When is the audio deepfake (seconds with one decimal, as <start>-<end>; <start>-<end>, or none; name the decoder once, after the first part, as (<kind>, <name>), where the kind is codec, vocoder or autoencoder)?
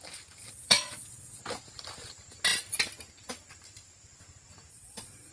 0.4-1.4 (vocoder, Vocos); 4.7-5.3